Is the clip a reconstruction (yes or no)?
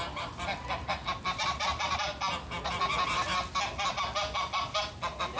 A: no